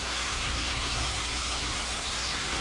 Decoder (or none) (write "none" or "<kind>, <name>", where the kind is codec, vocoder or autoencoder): codec, SNAC